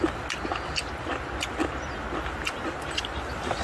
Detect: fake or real real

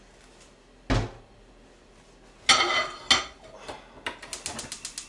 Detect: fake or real real